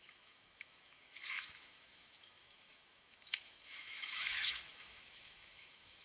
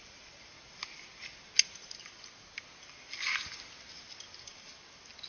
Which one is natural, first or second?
second